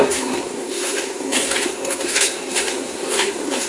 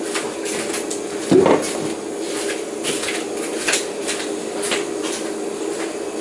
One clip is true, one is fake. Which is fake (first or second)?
first